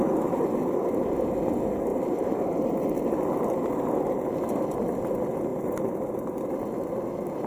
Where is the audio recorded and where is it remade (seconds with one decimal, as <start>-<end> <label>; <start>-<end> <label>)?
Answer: 0.0-7.5 recorded